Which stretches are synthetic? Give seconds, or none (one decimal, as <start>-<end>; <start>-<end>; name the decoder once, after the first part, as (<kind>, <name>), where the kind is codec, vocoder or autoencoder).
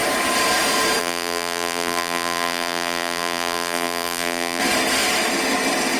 1.0-4.6 (vocoder, BigVGAN v2)